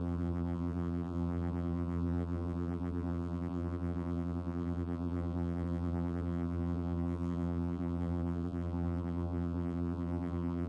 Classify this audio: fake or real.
fake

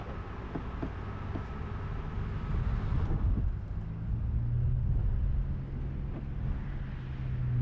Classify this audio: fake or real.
real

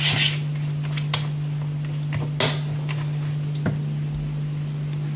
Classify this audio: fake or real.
real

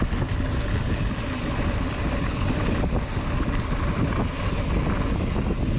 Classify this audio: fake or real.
real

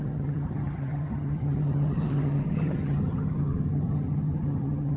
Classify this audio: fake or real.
fake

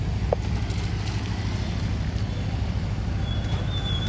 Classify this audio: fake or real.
real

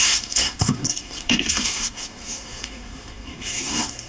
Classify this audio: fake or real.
fake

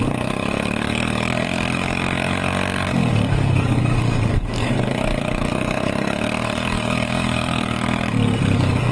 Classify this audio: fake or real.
fake